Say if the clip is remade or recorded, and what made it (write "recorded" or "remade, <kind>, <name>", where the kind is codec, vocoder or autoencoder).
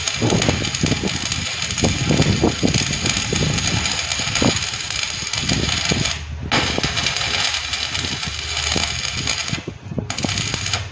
recorded